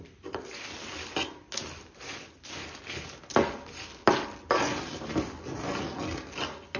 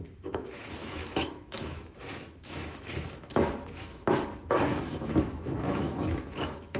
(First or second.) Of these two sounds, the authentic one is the first